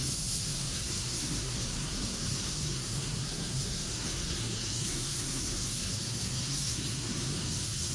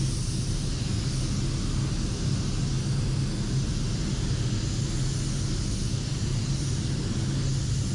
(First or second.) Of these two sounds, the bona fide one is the second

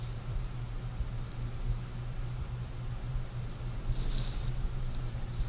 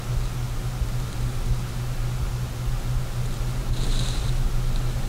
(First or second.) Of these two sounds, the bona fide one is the second